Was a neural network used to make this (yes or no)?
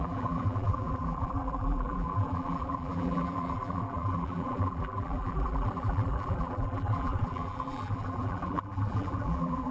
yes